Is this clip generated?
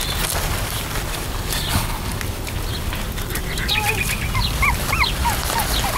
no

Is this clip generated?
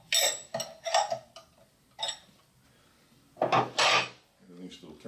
no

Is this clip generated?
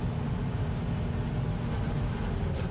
no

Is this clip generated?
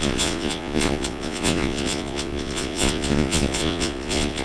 yes